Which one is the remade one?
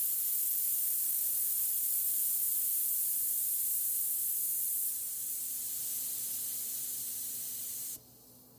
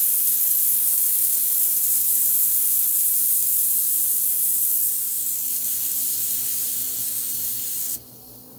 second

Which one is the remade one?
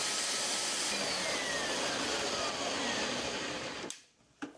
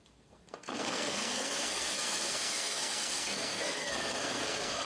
second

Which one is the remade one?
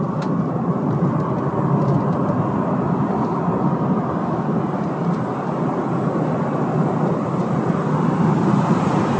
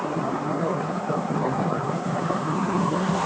second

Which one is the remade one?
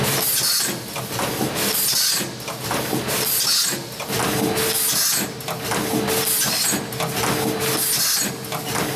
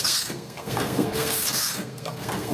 second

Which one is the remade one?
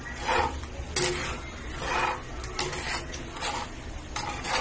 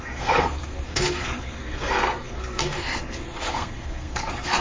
second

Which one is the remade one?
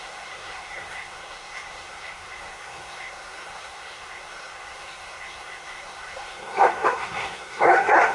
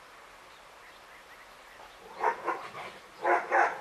first